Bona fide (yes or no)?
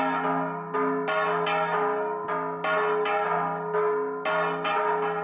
yes